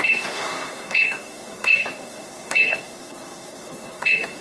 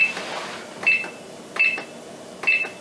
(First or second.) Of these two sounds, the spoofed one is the first